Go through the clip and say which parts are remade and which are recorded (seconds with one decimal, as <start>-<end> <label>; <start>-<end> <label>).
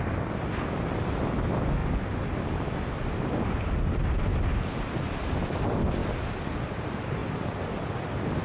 0.0-1.8 recorded; 1.8-4.2 remade; 4.2-7.2 recorded; 7.2-8.4 remade